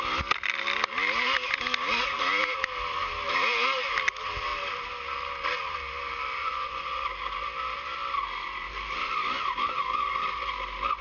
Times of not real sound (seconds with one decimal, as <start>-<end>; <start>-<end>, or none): 6.4-7.1